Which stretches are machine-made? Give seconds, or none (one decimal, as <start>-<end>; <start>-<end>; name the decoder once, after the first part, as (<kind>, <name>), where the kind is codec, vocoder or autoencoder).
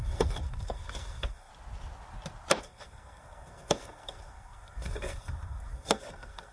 0.0-1.5 (codec, SNAC); 2.6-6.5